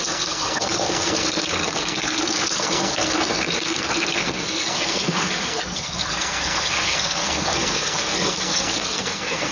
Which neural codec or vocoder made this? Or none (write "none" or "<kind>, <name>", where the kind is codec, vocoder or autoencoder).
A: codec, SNAC